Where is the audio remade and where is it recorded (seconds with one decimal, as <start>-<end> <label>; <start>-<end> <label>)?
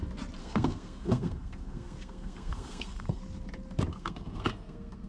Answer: 0.0-0.4 recorded; 0.4-3.2 remade; 3.2-3.9 recorded; 3.9-5.1 remade